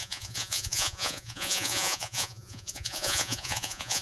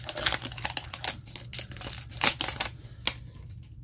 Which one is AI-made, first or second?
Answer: first